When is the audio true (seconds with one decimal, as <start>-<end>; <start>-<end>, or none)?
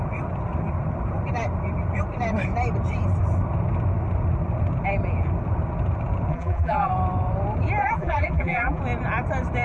0.0-6.3; 6.9-7.8; 8.8-9.6